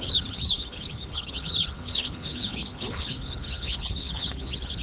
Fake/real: fake